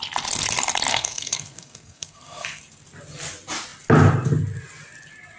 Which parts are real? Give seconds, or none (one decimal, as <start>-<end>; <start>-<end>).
0.0-0.9; 2.6-5.4